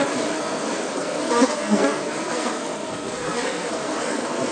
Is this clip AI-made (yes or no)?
yes